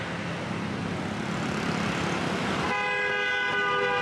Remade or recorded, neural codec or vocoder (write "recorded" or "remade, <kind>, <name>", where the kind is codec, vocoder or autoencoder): recorded